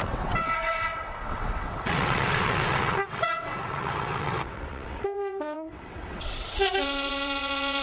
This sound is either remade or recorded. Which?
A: remade